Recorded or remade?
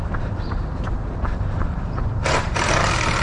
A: remade